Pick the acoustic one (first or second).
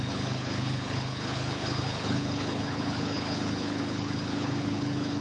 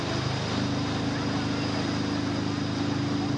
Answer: second